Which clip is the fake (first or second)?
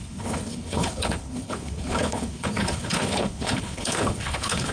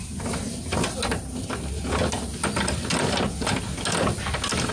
first